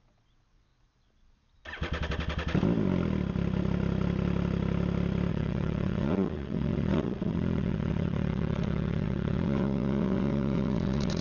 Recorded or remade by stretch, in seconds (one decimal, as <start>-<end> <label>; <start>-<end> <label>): 0.0-0.7 remade; 0.7-5.3 recorded; 5.3-11.2 remade